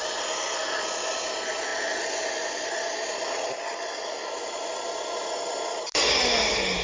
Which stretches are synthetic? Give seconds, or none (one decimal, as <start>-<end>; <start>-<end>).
none

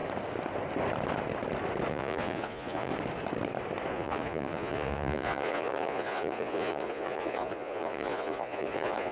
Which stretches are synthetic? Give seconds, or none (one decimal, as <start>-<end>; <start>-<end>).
1.9-2.9; 3.9-9.1